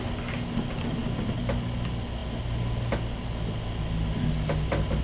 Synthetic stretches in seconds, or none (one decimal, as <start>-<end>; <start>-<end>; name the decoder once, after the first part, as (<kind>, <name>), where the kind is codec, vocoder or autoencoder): none